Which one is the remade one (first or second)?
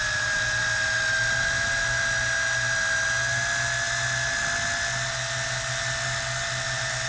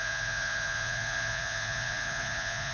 second